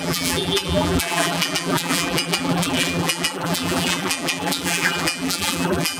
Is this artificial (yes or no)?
yes